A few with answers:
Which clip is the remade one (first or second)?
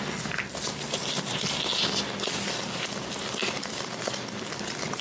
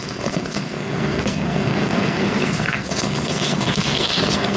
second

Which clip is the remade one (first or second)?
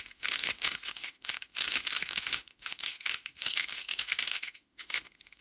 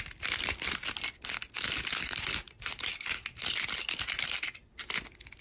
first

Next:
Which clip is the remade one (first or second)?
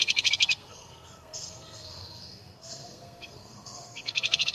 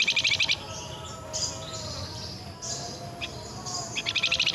first